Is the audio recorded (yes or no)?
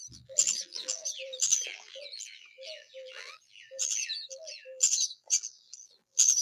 no